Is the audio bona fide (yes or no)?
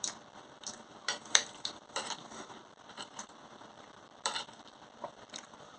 no